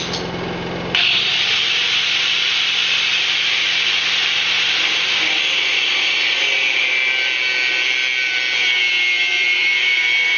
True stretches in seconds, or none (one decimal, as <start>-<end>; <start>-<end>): 0.0-9.3